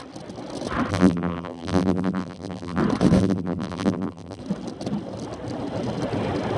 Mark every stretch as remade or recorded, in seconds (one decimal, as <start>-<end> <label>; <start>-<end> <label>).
0.0-0.9 recorded; 0.9-2.8 remade; 2.8-3.2 recorded; 3.2-4.4 remade; 4.4-6.6 recorded